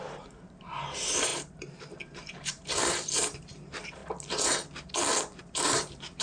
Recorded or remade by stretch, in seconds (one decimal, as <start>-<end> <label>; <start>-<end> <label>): 0.0-4.0 remade; 4.0-5.4 recorded; 5.4-6.2 remade